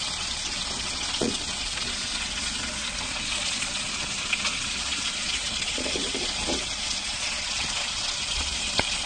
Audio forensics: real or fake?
fake